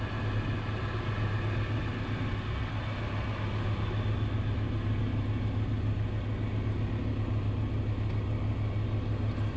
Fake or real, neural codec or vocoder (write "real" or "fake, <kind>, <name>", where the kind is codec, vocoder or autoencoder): real